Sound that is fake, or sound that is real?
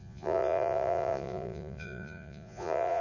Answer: fake